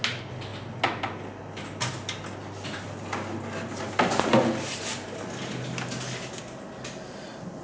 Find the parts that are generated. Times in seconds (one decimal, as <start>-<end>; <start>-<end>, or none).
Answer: none